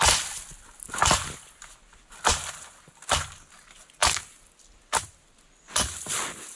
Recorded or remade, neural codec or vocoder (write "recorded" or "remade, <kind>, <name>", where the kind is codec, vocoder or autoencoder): recorded